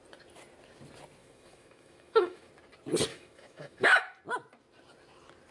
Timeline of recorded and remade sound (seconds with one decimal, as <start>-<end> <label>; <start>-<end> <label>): 0.0-1.2 recorded; 1.2-2.5 remade; 2.5-3.1 recorded; 3.1-4.0 remade; 4.0-5.5 recorded